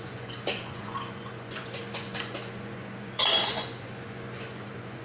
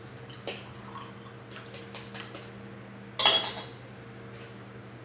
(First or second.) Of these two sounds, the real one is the second